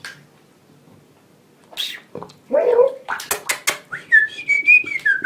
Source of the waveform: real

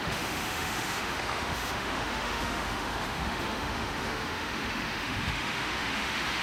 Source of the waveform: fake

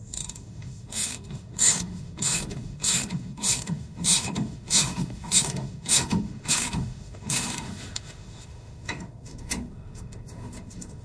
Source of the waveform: fake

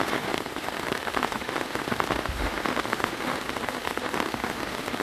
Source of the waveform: fake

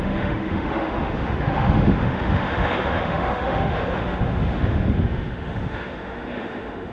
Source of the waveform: fake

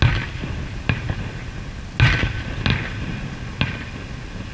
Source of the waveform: real